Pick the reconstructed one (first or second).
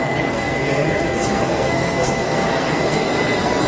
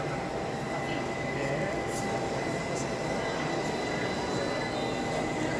first